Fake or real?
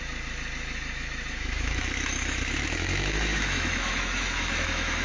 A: fake